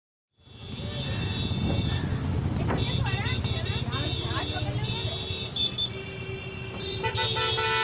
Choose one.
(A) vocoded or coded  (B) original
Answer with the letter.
B